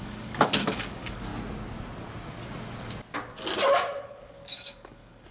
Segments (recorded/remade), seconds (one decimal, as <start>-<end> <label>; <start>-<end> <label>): 0.0-1.3 remade; 1.3-4.0 recorded; 4.0-5.3 remade